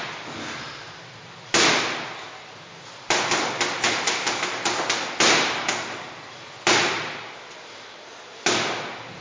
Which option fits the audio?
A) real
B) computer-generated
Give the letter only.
A